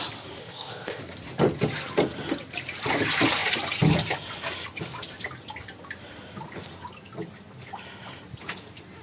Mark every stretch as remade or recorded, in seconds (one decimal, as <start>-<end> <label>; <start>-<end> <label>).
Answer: 0.0-0.4 recorded; 0.4-1.0 remade; 1.0-9.0 recorded